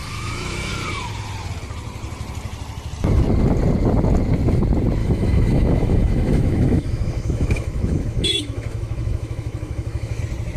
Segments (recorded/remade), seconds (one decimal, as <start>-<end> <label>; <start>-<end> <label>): 0.0-0.7 remade; 0.7-5.0 recorded; 5.0-10.2 remade; 10.2-10.6 recorded